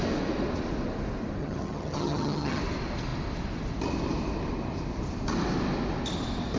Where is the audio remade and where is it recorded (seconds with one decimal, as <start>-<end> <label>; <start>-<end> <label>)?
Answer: 0.0-1.4 recorded; 1.4-2.6 remade; 2.6-6.6 recorded